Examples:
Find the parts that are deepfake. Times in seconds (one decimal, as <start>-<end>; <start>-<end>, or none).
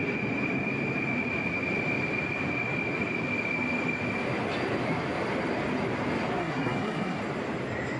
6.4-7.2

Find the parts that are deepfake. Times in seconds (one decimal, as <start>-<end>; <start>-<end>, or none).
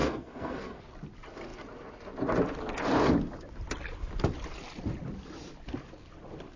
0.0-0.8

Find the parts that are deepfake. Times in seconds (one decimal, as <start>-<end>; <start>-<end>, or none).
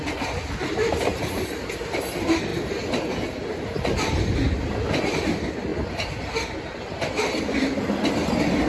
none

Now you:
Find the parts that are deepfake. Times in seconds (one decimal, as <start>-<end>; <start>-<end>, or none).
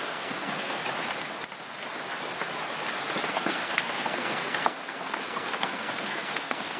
0.0-0.8; 3.3-6.8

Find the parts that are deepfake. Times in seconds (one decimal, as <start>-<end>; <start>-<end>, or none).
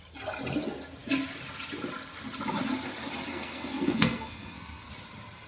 3.3-4.9